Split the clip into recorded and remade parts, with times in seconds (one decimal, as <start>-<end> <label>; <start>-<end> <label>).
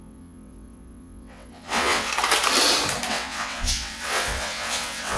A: 0.0-2.1 remade; 2.1-3.1 recorded; 3.1-5.2 remade